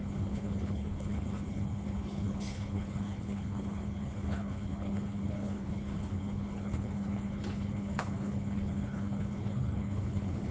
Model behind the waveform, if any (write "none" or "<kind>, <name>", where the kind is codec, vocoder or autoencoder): codec, HILCodec